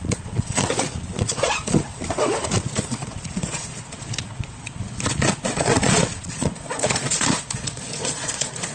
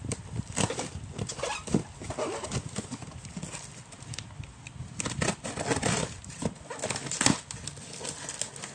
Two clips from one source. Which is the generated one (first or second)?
first